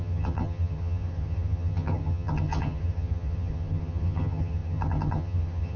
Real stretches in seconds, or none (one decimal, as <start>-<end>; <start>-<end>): none